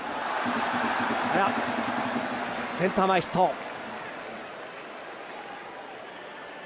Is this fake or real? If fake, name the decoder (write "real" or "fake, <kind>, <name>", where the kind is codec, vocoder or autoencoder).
real